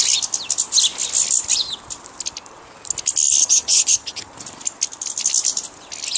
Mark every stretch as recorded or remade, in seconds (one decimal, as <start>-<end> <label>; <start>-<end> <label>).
0.0-3.4 recorded; 3.4-4.3 remade; 4.3-6.2 recorded